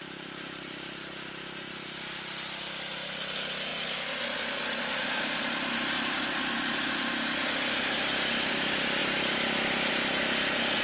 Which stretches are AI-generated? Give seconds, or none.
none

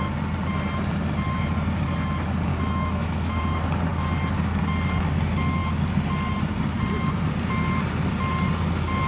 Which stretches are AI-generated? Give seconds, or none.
2.5-3.4 (autoencoder, DAC-VAE)

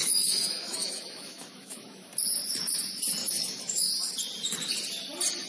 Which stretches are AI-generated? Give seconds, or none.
0.0-2.1 (autoencoder, DAC-VAE); 3.2-3.9

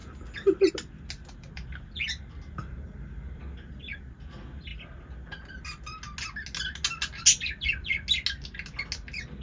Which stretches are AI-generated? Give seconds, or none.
none

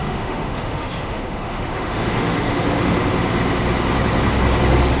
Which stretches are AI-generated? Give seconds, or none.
0.0-3.0 (autoencoder, DAC-VAE)

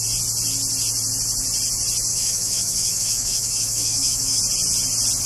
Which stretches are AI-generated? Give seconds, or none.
2.1-4.4 (autoencoder, DAC-VAE)

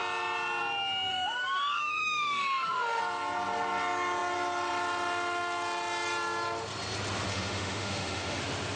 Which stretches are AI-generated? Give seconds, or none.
1.1-3.0 (autoencoder, DAC-VAE); 7.3-8.4

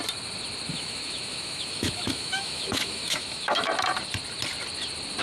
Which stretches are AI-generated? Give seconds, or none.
0.7-3.7 (autoencoder, DAC-VAE)